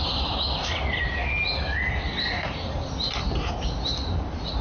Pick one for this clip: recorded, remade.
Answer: recorded